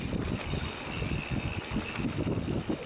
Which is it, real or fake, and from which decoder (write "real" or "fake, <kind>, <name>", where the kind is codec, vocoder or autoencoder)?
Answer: real